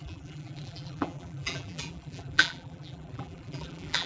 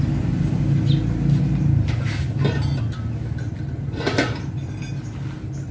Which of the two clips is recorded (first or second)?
second